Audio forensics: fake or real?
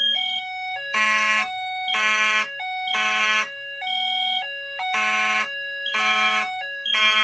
fake